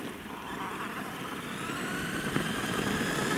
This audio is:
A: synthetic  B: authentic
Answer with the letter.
B